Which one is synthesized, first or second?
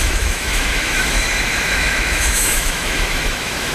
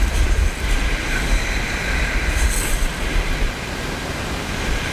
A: first